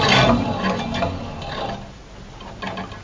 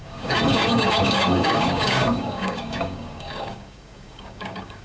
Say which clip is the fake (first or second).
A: second